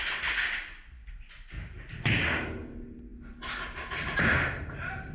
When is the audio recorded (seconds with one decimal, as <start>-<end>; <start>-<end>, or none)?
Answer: 0.0-5.1